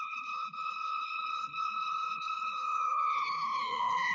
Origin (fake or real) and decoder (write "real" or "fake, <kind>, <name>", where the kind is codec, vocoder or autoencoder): fake, codec, HILCodec